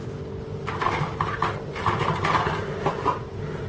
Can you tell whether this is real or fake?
real